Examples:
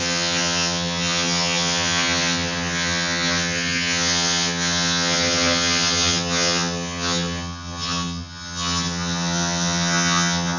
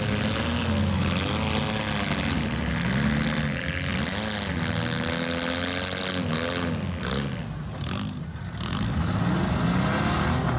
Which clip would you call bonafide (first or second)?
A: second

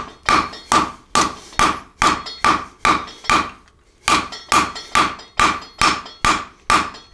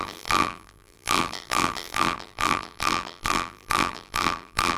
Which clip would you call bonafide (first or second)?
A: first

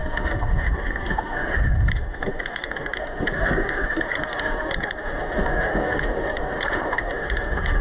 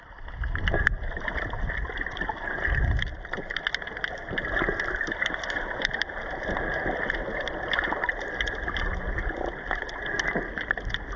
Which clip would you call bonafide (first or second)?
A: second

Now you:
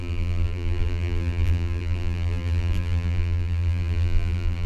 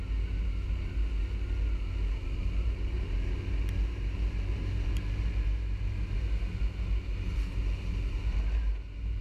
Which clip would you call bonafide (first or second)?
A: second